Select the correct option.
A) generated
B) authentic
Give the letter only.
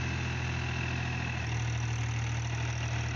B